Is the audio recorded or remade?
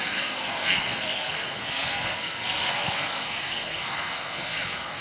remade